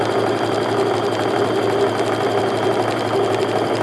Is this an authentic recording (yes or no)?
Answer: yes